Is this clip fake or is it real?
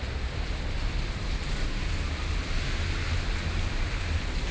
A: real